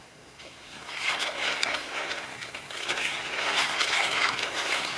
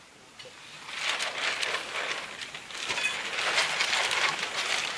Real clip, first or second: second